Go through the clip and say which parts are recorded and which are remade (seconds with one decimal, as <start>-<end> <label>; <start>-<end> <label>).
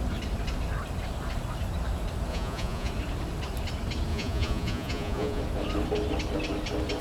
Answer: 0.0-2.3 recorded; 2.3-2.9 remade; 2.9-4.1 recorded; 4.1-5.4 remade; 5.4-7.0 recorded